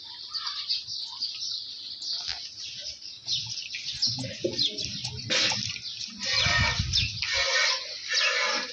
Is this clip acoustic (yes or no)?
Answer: yes